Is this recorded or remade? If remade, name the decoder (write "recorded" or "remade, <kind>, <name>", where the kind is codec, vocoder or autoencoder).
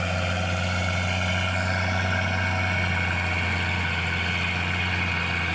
recorded